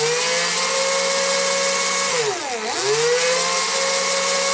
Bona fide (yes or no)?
yes